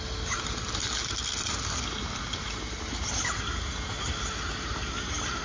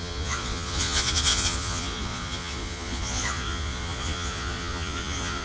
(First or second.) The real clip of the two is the first